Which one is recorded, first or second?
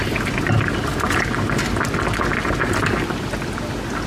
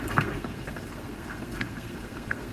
first